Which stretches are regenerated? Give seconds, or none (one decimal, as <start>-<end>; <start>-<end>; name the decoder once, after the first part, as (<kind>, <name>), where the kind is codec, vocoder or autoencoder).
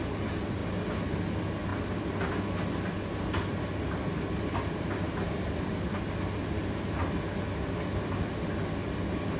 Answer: none